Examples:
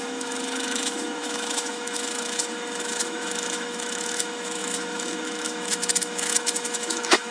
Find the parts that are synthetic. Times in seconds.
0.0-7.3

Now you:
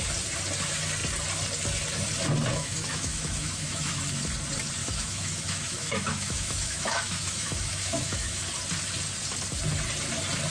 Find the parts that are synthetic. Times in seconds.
2.5-4.0; 4.8-8.4